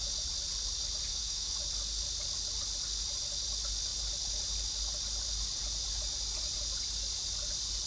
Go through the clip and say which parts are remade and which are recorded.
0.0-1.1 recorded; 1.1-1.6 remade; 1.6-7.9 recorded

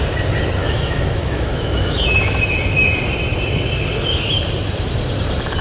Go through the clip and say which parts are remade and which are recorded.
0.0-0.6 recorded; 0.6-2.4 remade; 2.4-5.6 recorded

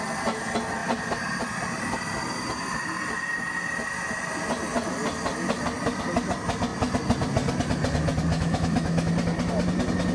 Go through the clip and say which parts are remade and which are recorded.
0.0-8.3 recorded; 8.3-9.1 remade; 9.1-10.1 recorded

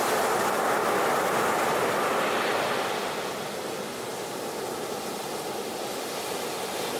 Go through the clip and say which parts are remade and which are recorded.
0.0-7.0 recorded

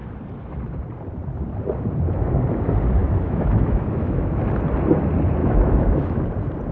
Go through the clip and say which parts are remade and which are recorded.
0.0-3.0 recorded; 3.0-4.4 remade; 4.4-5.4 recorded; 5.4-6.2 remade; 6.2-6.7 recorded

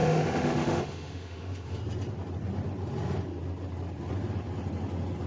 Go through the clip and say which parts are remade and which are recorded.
0.0-1.8 remade; 1.8-5.3 recorded